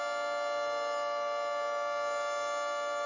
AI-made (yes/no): no